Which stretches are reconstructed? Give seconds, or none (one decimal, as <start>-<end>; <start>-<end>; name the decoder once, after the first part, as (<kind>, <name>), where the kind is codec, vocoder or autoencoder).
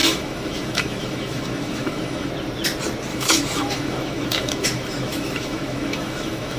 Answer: 0.0-2.3 (autoencoder, DAC-VAE); 3.1-6.6